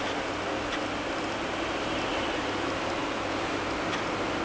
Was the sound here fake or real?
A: real